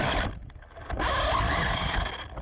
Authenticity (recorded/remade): recorded